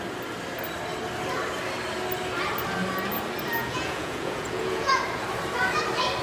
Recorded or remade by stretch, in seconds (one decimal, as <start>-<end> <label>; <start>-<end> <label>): 0.0-3.6 recorded; 3.6-5.0 remade; 5.0-6.2 recorded